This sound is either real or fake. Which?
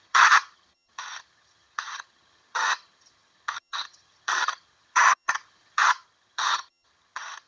fake